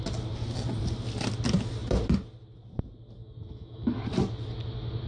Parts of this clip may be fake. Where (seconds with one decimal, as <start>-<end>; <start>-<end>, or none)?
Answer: 3.2-4.0